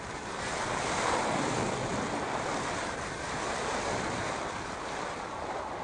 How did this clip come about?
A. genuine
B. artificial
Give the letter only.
B